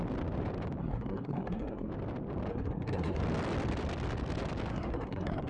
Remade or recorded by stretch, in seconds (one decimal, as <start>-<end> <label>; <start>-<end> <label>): 0.0-0.8 recorded; 0.8-1.9 remade; 1.9-2.5 recorded; 2.5-3.2 remade; 3.2-4.7 recorded; 4.7-5.5 remade